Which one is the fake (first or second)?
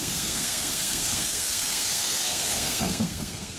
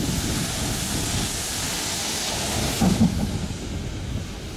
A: first